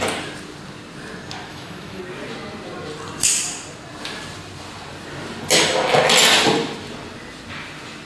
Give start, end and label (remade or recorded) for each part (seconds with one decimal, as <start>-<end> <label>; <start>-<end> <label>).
0.0-1.5 recorded; 1.5-2.0 remade; 2.0-8.0 recorded